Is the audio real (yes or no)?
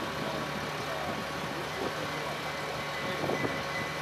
yes